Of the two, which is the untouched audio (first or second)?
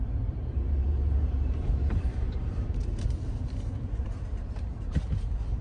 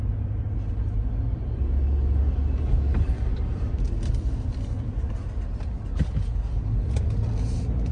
second